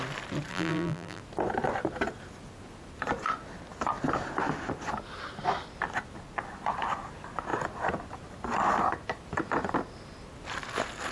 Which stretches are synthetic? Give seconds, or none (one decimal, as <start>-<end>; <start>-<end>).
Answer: 0.5-1.2